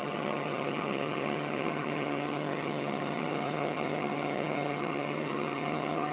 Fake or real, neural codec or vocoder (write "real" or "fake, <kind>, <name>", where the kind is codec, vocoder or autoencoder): fake, vocoder, HiFi-GAN